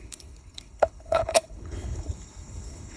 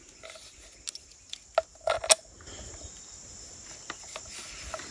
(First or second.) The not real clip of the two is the first